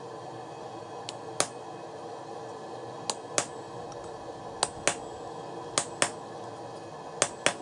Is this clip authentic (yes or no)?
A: yes